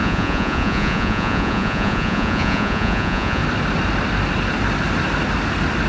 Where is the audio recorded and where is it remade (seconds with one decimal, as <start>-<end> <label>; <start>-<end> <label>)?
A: 0.0-3.4 remade; 3.4-5.9 recorded